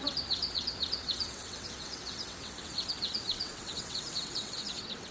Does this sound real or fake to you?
fake